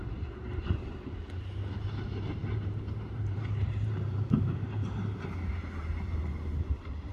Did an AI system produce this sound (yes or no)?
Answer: yes